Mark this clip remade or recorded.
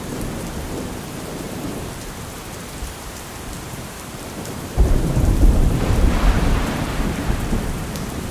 remade